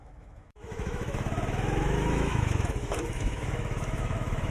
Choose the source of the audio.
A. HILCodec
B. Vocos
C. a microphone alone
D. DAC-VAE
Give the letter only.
D